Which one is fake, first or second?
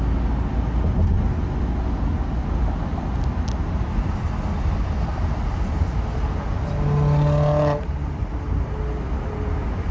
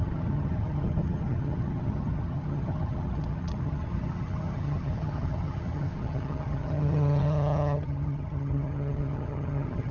second